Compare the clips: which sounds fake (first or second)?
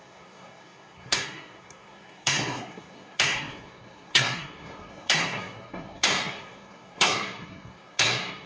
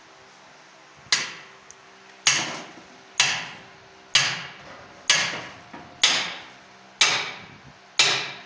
first